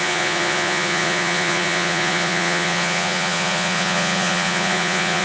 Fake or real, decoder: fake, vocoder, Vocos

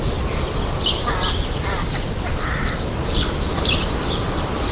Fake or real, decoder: real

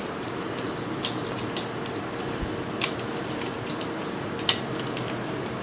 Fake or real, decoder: real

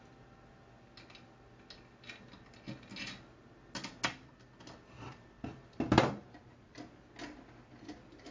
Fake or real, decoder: real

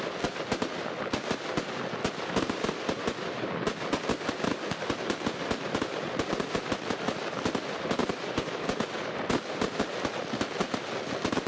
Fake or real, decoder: real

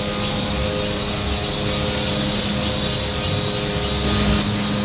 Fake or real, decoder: real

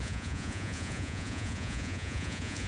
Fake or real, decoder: fake, vocoder, Vocos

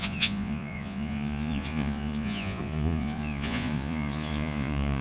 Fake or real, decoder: fake, vocoder, Vocos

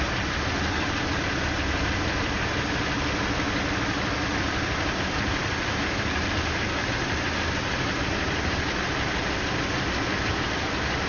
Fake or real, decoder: real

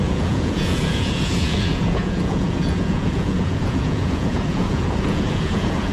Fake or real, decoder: fake, vocoder, Vocos